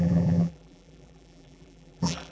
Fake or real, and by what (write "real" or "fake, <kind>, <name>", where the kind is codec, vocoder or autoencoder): fake, vocoder, BigVGAN v2